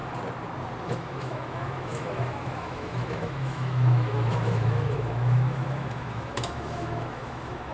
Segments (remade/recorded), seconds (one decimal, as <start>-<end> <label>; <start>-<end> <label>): 0.0-0.8 recorded; 0.8-7.7 remade